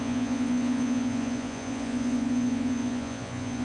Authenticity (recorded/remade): remade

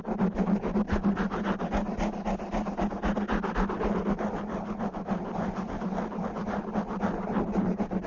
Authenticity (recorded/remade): recorded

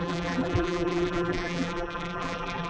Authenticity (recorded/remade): remade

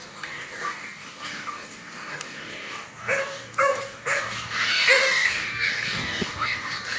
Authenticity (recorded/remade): remade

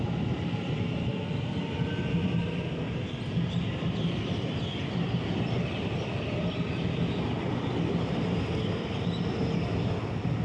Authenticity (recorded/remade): recorded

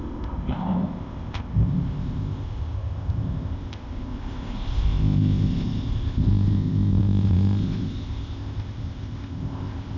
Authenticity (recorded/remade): remade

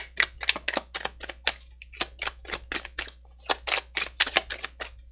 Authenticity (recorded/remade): recorded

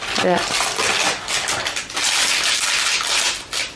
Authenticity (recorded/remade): recorded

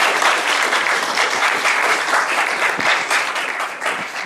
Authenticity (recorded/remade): remade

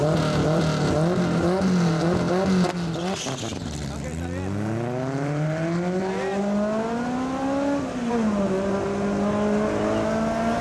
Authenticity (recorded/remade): recorded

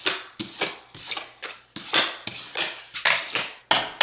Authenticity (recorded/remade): recorded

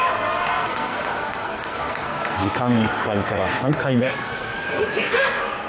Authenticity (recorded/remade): remade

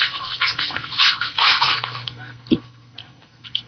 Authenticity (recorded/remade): remade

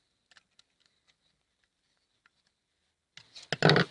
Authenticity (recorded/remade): recorded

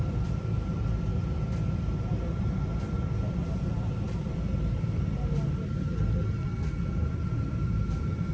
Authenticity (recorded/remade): remade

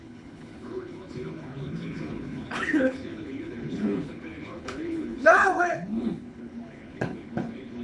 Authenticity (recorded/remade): remade